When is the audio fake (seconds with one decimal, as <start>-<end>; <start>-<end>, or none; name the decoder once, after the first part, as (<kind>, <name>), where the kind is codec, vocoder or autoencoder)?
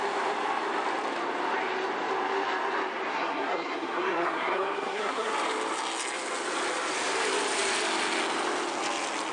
3.1-5.3 (codec, SNAC)